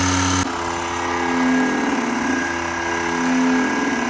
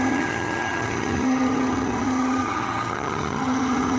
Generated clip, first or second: second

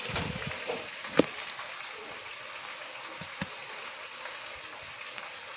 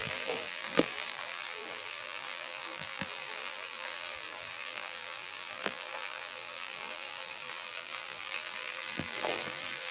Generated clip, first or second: second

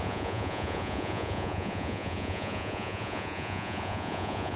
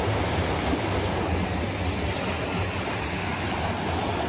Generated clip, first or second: first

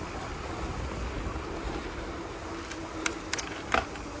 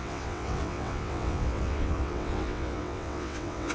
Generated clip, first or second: second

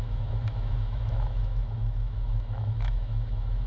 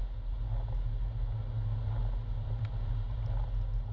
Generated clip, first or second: first